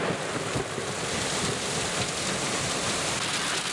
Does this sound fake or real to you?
real